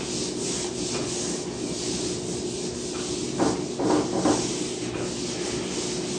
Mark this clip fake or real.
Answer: real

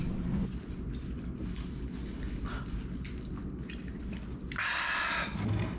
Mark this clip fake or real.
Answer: real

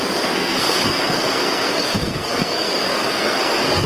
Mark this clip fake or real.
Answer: fake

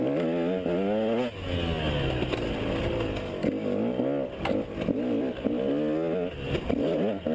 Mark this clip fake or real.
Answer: real